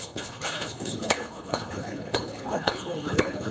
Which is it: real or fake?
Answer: fake